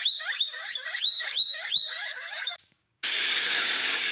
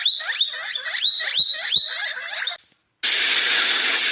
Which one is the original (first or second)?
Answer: second